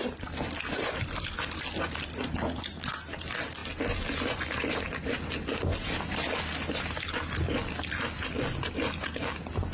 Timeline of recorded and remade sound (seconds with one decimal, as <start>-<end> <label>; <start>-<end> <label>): 0.0-9.7 recorded